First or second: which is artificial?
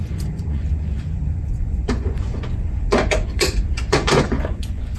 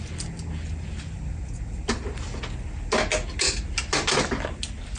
first